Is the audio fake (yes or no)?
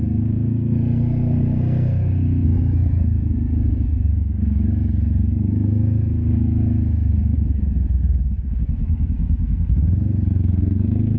yes